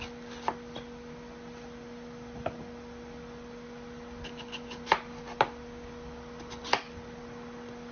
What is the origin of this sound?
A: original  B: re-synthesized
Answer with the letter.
A